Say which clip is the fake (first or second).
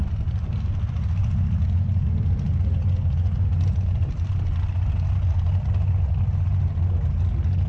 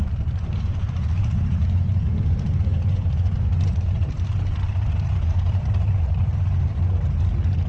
second